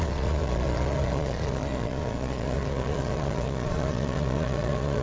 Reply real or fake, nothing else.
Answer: fake